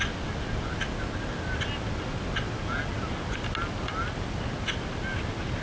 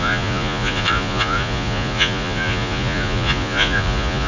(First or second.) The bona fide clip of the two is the first